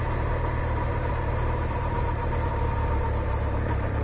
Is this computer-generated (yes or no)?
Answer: yes